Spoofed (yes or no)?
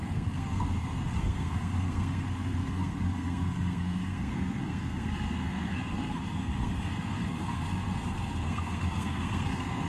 yes